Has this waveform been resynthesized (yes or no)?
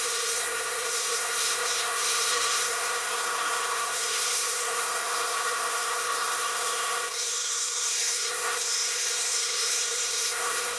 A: yes